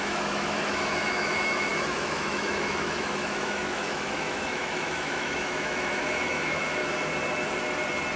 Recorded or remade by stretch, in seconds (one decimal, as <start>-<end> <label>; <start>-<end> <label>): 0.0-6.8 remade; 6.8-8.2 recorded